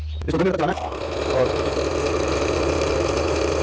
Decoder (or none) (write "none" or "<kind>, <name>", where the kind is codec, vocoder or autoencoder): none